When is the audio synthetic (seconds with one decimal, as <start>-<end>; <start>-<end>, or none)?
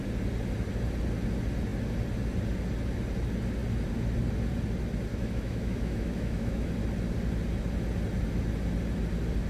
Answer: 5.1-6.7